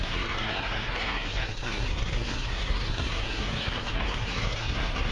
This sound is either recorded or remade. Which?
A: remade